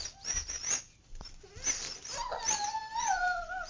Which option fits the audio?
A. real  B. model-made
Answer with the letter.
A